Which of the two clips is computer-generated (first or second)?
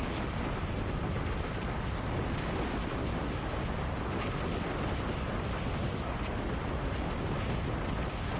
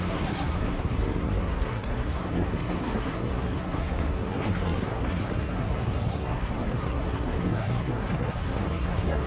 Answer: second